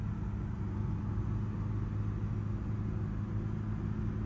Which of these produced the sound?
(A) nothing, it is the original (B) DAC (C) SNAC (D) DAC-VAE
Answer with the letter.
A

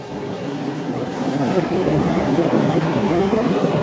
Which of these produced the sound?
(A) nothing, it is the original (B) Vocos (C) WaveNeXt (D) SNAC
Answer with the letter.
D